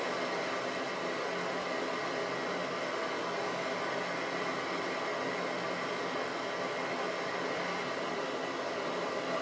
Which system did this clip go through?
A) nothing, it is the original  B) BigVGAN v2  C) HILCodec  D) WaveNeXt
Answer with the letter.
A